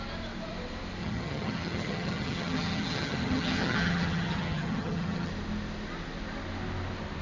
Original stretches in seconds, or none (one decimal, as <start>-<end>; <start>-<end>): 0.0-1.0; 5.3-7.2